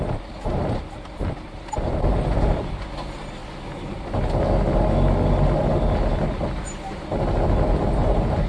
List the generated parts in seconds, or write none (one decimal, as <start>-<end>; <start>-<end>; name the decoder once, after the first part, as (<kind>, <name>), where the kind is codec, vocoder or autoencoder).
0.0-3.4 (vocoder, BigVGAN v2); 7.9-8.5

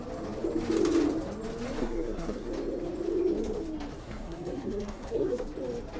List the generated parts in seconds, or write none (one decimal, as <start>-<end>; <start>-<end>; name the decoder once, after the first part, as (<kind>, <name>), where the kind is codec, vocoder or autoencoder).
1.8-2.5 (codec, SNAC); 4.0-5.4

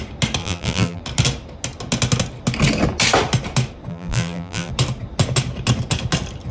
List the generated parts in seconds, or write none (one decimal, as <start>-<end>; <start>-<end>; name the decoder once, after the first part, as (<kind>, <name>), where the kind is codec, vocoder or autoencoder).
0.4-1.0 (vocoder, BigVGAN v2); 3.9-4.7

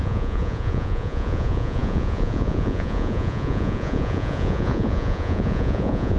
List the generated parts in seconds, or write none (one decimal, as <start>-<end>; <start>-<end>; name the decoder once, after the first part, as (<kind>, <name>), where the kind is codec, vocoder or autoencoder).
0.0-6.2 (vocoder, Vocos)

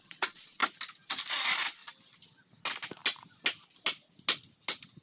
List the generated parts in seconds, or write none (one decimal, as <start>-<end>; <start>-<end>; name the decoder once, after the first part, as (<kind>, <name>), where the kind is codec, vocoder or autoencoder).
0.0-0.6 (vocoder, Vocos); 1.3-1.8

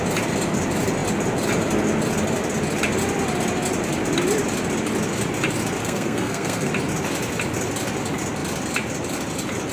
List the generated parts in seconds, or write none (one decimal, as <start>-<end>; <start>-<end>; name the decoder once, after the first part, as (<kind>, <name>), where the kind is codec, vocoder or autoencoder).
5.8-6.7 (codec, SNAC)